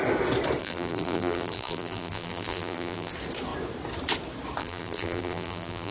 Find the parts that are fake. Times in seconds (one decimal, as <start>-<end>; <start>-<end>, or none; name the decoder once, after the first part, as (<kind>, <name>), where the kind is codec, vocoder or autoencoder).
0.6-3.1 (vocoder, BigVGAN v2); 4.6-5.9